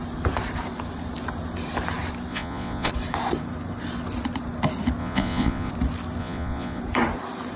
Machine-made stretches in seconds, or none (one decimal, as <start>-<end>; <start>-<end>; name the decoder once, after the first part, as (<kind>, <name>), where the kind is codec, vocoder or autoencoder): 2.3-2.9 (vocoder, Vocos); 5.0-5.7; 6.2-6.8

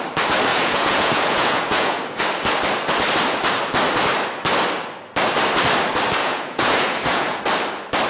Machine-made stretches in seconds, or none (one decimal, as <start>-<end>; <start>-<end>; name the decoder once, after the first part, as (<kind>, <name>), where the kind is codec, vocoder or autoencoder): 0.5-2.2 (vocoder, Vocos); 6.2-7.4

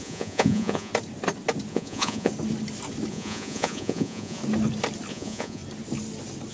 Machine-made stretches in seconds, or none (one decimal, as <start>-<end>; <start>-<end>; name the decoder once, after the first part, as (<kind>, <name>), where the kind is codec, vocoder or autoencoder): 0.0-0.9 (vocoder, Vocos); 1.7-2.3; 3.1-4.4; 5.1-5.6